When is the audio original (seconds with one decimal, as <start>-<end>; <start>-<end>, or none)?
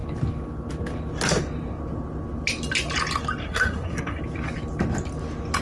0.0-3.4; 4.2-5.6